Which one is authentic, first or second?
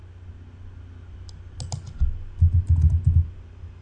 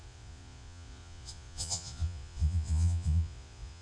first